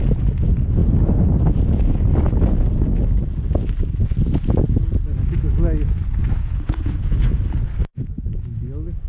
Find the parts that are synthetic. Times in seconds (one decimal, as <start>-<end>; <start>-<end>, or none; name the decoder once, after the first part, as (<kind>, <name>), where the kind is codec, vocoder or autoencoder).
6.2-7.2 (vocoder, Vocos)